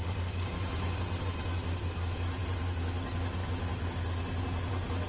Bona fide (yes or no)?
yes